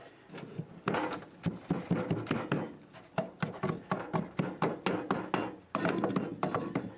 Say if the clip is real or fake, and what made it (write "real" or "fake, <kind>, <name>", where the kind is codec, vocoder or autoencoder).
real